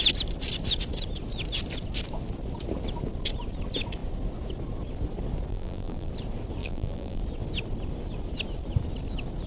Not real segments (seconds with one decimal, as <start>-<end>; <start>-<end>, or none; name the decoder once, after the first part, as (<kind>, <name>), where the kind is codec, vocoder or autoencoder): 5.5-6.1 (vocoder, BigVGAN v2); 6.6-7.2